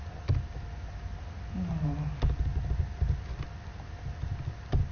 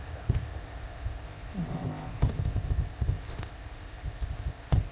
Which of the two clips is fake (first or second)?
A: second